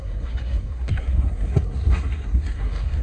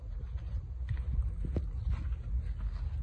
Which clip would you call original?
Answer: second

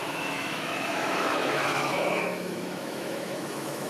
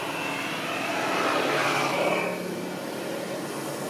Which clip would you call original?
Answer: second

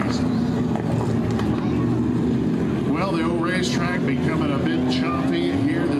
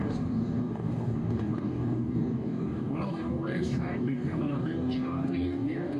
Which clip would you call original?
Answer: first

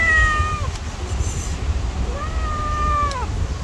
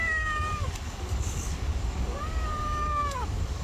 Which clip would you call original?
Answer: first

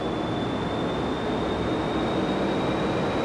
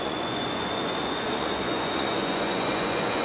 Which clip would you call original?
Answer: first